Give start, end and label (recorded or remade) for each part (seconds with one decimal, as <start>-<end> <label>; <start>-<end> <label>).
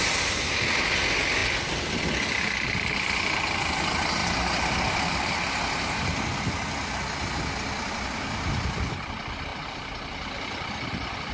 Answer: 0.0-11.3 recorded